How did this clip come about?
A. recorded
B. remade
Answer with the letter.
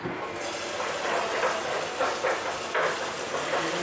A